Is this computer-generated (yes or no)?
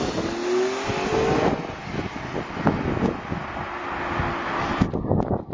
no